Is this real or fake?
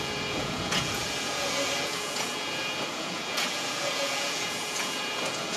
fake